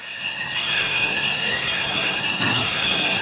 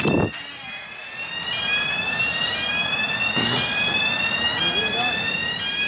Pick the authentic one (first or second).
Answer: second